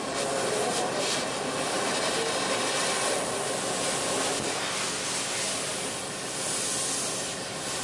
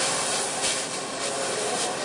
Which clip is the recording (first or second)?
first